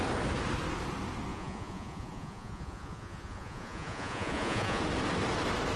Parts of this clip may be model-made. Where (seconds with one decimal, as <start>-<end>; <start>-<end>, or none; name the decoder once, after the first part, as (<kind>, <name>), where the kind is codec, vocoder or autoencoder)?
1.3-4.8 (vocoder, Vocos)